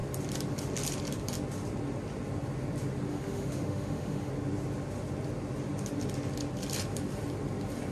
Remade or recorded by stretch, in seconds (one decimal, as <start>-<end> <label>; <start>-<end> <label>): 0.0-3.1 recorded; 3.1-4.3 remade; 4.3-7.9 recorded